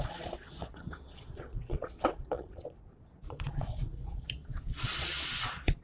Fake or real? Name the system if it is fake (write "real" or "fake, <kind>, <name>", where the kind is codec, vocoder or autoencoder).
fake, vocoder, Vocos